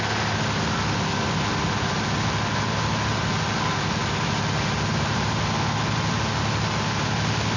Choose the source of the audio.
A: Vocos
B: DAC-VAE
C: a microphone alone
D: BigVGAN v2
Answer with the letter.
C